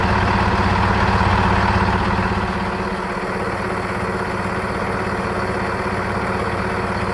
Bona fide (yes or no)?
yes